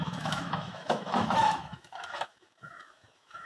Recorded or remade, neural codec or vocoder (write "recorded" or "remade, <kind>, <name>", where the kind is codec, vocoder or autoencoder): remade, autoencoder, DAC-VAE